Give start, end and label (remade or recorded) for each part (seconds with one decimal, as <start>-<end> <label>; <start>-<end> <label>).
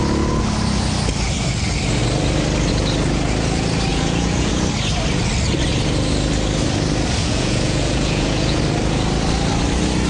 0.0-3.9 recorded; 3.9-4.5 remade; 4.5-7.2 recorded; 7.2-8.6 remade; 8.6-10.1 recorded